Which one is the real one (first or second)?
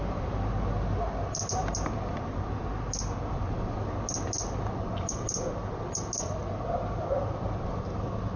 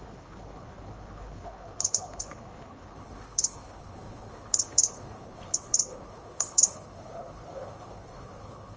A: first